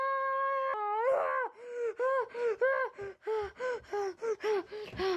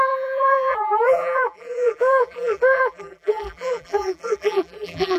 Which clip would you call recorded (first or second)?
first